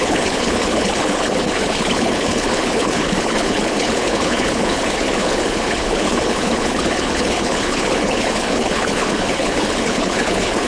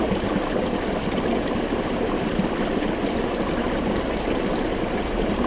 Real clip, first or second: second